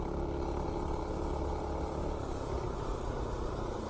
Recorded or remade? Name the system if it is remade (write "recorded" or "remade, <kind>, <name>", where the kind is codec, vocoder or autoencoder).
recorded